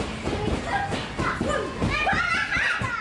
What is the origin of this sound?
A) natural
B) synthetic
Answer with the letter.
A